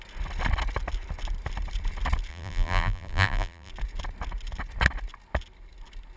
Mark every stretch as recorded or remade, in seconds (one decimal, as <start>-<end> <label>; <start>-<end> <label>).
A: 0.0-2.3 recorded; 2.3-3.7 remade; 3.7-6.2 recorded